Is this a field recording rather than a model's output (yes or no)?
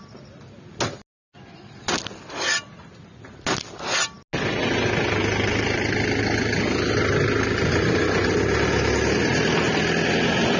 yes